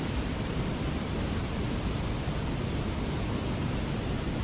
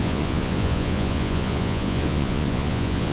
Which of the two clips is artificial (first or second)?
second